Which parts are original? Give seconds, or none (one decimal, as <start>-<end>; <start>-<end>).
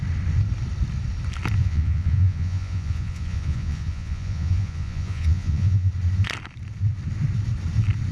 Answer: 0.0-1.6; 5.9-8.1